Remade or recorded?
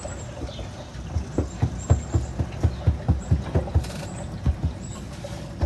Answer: recorded